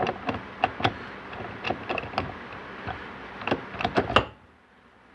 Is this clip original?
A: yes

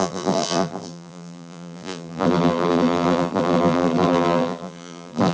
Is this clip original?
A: no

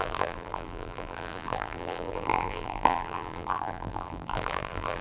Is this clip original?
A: no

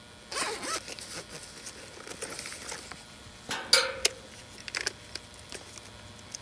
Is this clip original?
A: yes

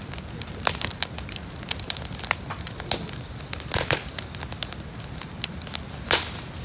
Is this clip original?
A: yes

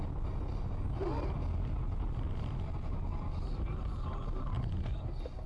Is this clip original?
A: yes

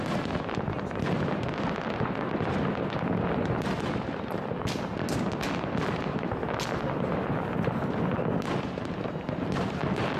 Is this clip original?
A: yes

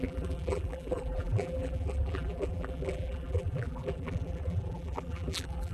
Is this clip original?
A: no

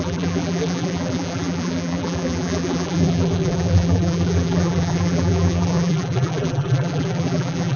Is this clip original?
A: no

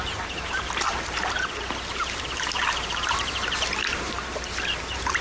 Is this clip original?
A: no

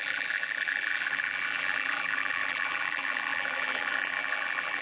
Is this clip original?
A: no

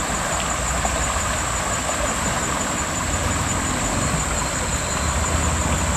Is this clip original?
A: no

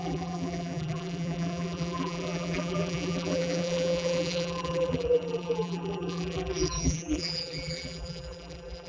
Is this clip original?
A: no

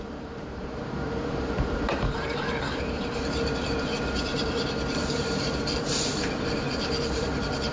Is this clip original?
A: no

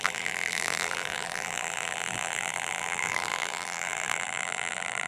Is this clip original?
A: no